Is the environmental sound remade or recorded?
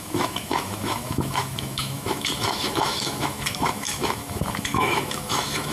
remade